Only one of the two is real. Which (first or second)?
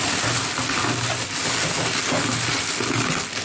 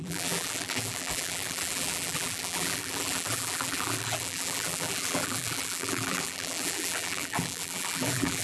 first